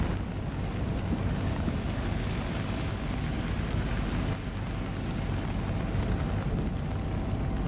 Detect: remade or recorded recorded